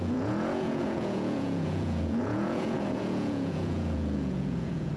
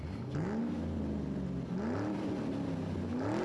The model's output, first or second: first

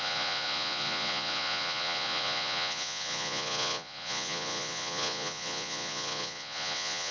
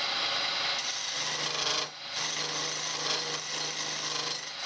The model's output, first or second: first